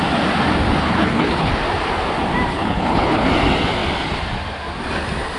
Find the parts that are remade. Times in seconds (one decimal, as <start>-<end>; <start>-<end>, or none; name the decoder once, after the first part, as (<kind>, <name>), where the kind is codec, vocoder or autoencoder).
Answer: 0.8-1.5 (codec, HILCodec); 2.5-3.3